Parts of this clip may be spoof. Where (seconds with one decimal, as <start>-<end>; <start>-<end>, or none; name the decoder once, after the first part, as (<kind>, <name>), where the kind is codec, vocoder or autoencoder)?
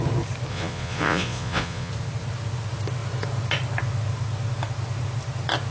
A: 0.5-1.9 (vocoder, Vocos)